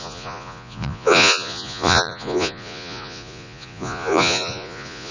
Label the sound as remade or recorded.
remade